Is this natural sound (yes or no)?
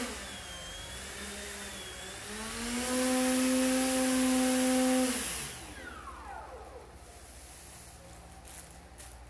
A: yes